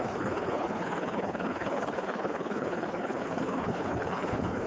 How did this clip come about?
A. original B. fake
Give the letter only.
B